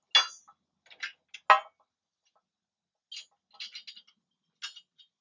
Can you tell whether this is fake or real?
real